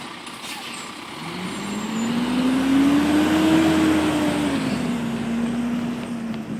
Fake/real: real